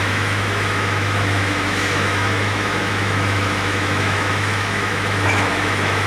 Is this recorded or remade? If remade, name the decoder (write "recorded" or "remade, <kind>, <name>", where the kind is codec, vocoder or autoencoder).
remade, autoencoder, DAC-VAE